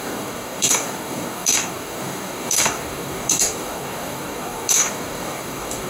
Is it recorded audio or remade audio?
remade